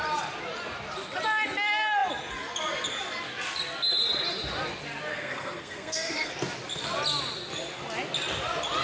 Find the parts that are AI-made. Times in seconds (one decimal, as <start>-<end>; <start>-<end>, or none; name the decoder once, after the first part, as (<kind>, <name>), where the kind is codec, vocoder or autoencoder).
5.1-6.3 (codec, SNAC)

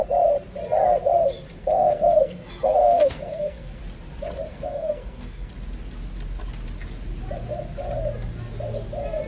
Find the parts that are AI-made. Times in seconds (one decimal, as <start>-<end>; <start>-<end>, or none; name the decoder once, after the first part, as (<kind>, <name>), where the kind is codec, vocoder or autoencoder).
1.6-3.8 (codec, SNAC); 4.5-5.5